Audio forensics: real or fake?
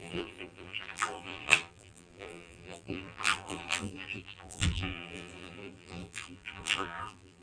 fake